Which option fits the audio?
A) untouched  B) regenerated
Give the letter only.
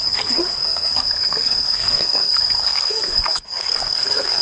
B